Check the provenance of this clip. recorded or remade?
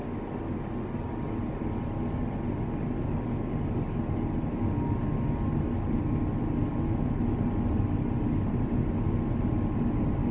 recorded